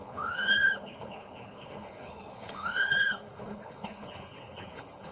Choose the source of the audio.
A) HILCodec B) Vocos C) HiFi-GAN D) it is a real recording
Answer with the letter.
A